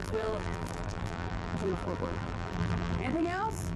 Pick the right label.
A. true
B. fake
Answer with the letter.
B